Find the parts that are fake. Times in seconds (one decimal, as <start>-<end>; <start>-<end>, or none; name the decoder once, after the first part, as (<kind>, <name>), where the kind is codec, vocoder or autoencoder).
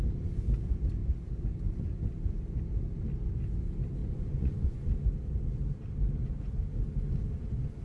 4.0-4.9 (vocoder, Vocos)